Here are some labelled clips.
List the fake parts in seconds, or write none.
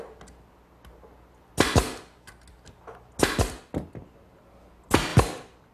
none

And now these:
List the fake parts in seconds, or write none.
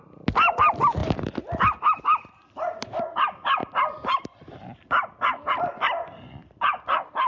none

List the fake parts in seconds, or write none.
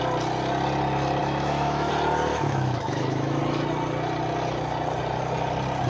1.2-1.9 (autoencoder, DAC-VAE); 2.3-3.4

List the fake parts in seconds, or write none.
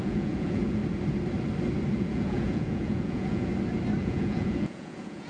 0.0-0.8 (vocoder, Vocos); 1.9-3.5; 4.0-5.3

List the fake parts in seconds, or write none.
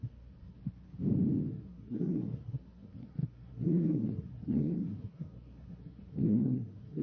0.0-0.6 (codec, SNAC); 1.5-7.0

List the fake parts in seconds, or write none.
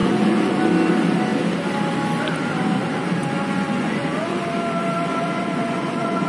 0.0-0.6 (vocoder, Vocos); 3.2-4.4; 5.1-6.3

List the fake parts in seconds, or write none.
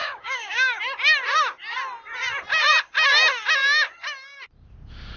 0.0-0.8 (codec, DAC)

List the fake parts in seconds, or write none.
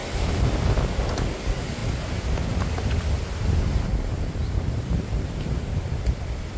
4.4-6.6 (vocoder, BigVGAN v2)